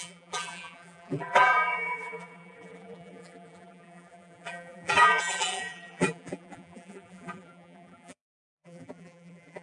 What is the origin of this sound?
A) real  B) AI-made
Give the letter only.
B